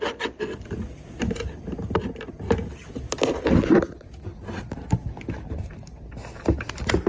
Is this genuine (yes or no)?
yes